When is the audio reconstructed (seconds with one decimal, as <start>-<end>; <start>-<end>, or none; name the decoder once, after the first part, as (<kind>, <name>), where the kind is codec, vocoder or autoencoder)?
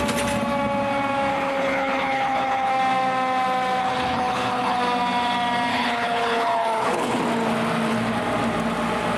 1.3-2.7 (codec, HILCodec); 3.8-4.8; 5.7-7.2